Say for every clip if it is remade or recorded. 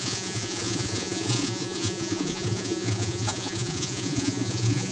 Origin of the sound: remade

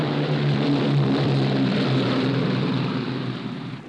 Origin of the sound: remade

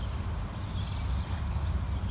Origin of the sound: recorded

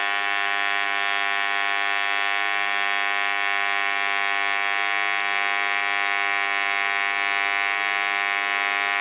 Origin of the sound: recorded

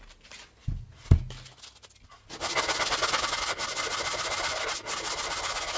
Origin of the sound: recorded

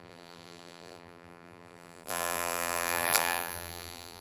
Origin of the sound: remade